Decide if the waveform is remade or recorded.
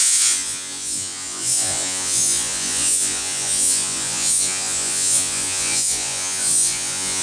remade